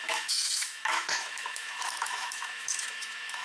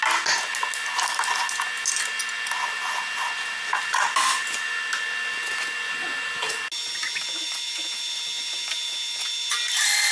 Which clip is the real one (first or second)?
second